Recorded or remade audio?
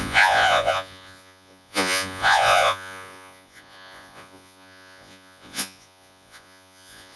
remade